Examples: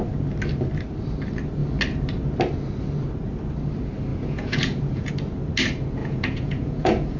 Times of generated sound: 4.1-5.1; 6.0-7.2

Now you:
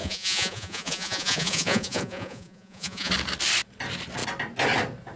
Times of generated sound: 0.0-3.1